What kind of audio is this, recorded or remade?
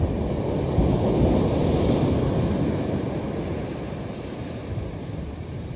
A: recorded